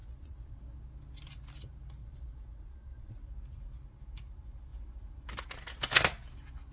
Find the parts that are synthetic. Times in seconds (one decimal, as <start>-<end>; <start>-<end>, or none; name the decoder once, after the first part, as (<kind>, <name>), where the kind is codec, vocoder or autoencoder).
0.0-0.6 (vocoder, Vocos); 2.0-3.2